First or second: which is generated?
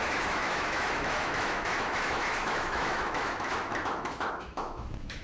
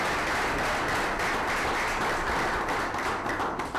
first